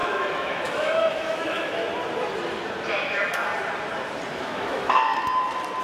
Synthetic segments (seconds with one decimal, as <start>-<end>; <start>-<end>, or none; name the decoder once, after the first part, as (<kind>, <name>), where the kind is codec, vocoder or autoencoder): 0.0-1.8 (autoencoder, DAC-VAE); 3.0-3.4; 4.3-5.1